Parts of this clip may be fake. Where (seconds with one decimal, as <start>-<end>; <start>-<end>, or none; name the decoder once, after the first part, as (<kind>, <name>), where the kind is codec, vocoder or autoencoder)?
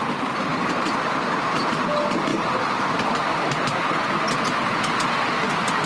none